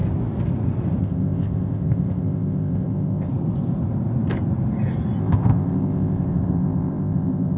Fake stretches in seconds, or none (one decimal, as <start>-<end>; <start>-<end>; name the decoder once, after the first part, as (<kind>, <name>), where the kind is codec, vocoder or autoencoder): 1.0-3.3 (codec, ZipCodec); 5.2-7.6